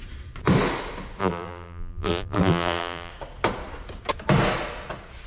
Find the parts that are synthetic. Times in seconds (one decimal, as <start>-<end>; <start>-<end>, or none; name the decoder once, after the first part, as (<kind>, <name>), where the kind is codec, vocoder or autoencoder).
1.2-3.1 (vocoder, BigVGAN v2)